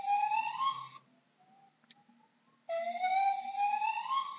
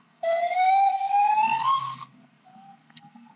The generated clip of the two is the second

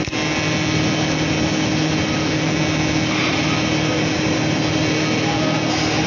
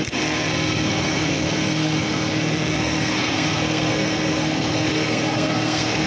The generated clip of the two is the second